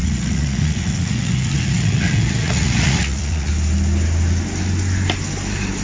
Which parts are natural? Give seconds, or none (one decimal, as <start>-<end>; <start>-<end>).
3.5-5.8